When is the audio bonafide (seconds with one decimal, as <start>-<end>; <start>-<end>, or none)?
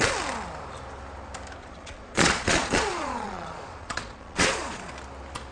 0.0-1.6; 4.9-5.5